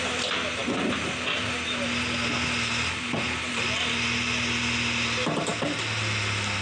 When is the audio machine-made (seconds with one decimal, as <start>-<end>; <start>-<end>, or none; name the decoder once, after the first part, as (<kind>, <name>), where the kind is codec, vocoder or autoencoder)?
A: none